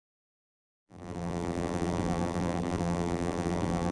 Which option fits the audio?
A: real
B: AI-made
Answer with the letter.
B